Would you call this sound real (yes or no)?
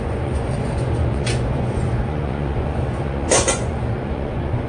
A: no